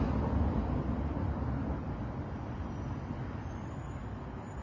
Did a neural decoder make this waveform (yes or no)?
no